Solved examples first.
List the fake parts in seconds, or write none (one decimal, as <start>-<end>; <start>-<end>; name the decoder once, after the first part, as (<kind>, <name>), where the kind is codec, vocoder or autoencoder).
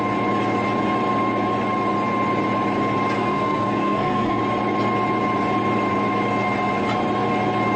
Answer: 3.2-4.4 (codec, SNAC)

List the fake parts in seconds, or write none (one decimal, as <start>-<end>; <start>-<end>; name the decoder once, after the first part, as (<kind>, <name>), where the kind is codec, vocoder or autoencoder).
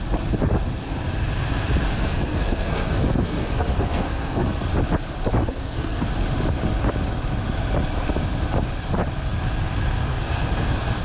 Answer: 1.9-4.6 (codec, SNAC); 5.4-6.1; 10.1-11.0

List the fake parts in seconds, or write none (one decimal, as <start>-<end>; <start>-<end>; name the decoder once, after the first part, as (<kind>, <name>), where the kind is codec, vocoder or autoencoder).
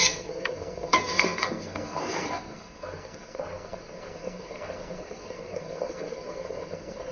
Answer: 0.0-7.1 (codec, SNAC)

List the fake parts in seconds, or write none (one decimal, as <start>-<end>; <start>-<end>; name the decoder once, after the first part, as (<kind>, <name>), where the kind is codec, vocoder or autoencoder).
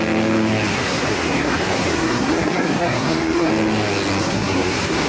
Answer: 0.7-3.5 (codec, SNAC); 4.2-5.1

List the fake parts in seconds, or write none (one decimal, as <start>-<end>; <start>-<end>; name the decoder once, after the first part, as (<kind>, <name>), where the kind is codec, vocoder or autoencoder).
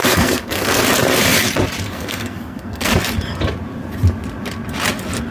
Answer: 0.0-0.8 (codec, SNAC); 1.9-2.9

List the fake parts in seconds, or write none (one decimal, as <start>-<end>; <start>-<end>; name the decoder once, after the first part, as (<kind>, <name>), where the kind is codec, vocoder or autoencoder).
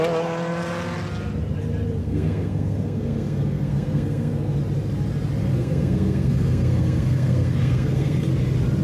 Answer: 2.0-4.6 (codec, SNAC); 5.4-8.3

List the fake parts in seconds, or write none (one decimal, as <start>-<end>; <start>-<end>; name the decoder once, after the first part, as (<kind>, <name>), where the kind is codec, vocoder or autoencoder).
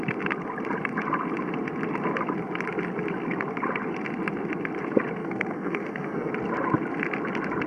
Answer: 5.2-6.3 (codec, SNAC)